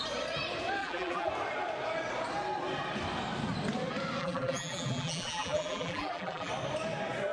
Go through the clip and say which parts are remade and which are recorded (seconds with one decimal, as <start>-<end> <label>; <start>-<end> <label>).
0.0-0.8 recorded; 0.8-1.3 remade; 1.3-4.2 recorded; 4.2-6.5 remade; 6.5-7.3 recorded